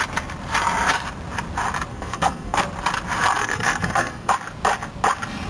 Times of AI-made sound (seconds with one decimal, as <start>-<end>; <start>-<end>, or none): 1.9-2.6; 3.4-4.3